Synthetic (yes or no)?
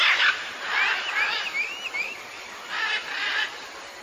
no